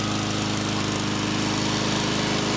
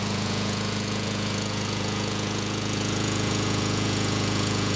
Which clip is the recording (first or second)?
first